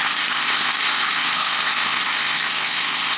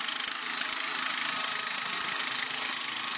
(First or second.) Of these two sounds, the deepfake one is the first